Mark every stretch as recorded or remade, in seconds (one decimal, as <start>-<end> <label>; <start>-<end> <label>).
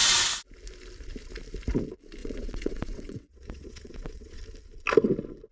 0.0-2.2 recorded; 2.2-4.4 remade; 4.4-5.5 recorded